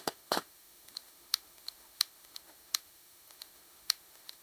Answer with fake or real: fake